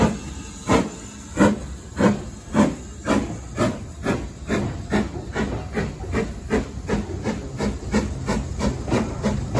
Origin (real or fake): real